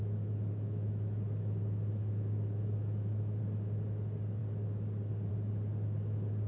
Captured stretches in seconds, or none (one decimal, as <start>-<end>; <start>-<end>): 3.4-6.5